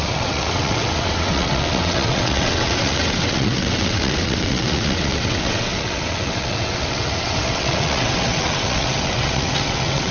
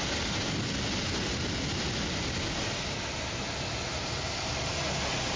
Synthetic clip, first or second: first